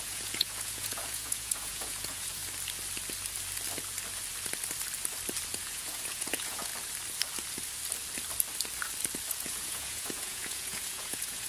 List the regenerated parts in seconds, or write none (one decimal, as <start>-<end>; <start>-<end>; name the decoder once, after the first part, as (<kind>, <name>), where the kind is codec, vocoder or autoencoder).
0.0-2.4 (vocoder, Vocos); 5.5-6.7; 9.3-11.5